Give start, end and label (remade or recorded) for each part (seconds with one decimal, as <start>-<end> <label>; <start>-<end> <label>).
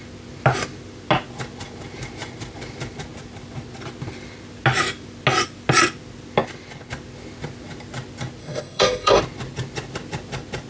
0.0-8.4 recorded; 8.4-9.2 remade; 9.2-10.7 recorded